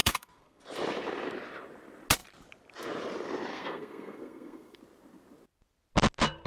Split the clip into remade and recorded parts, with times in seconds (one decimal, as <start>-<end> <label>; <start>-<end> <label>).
0.0-0.6 remade; 0.6-3.5 recorded; 3.5-4.8 remade; 4.8-6.5 recorded